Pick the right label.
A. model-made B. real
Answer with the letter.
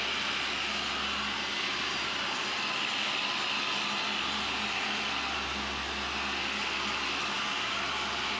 B